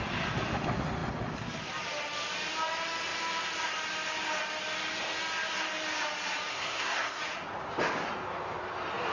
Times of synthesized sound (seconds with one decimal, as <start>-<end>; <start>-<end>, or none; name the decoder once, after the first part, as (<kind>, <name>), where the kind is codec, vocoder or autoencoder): 6.5-7.2 (codec, SNAC)